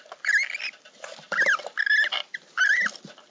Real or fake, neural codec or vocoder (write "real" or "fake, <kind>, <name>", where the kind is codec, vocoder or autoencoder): real